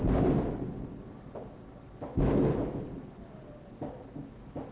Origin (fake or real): real